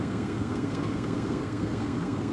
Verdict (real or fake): fake